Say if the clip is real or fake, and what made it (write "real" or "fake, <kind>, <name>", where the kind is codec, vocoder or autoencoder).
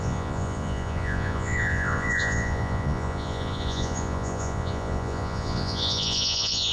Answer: fake, vocoder, Vocos